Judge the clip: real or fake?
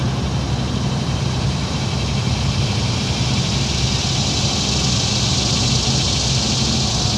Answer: real